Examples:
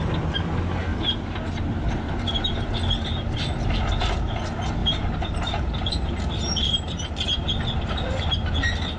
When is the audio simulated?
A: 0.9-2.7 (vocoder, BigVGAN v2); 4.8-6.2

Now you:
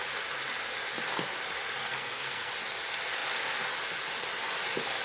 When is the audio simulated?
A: 1.8-2.5 (codec, SNAC)

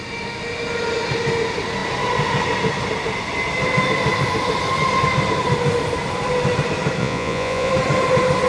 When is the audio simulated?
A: 7.0-7.7 (vocoder, Vocos)

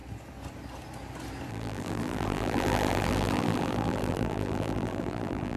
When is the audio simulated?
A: 1.5-5.6 (vocoder, BigVGAN v2)

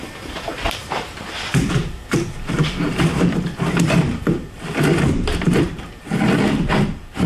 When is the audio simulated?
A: 0.0-7.3 (vocoder, BigVGAN v2)

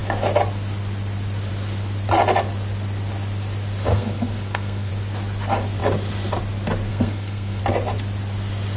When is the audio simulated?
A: 3.9-4.9 (codec, SNAC); 6.9-7.6